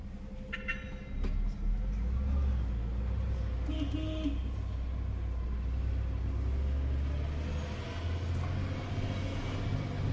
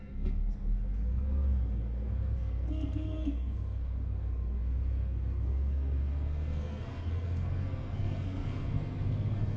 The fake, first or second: second